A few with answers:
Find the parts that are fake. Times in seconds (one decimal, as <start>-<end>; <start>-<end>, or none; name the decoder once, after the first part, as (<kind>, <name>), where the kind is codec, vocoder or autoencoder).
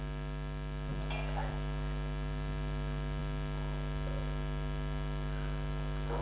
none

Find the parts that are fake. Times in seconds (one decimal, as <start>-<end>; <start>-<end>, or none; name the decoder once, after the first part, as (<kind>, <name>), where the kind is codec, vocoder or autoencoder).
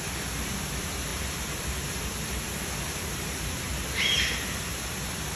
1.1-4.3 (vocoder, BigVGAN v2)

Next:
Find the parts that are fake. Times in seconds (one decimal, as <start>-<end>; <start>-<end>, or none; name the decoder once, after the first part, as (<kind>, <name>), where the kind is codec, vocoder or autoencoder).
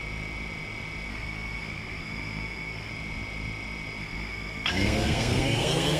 1.1-2.9 (codec, SNAC); 4.0-6.0